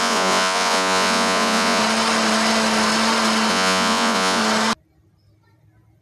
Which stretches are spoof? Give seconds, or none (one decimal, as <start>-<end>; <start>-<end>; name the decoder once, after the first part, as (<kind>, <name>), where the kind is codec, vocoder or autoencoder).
0.0-1.8 (vocoder, Vocos); 3.5-4.4